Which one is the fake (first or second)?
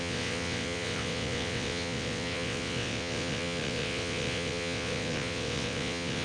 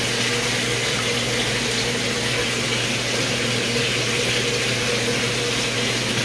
first